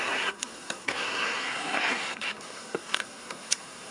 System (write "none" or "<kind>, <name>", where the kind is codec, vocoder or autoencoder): codec, SNAC